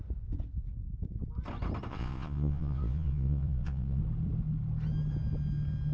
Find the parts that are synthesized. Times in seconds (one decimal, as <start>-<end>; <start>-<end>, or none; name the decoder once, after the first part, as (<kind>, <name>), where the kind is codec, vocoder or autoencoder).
1.9-4.0 (vocoder, Vocos)